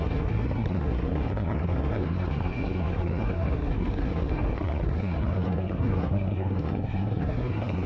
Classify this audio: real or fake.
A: fake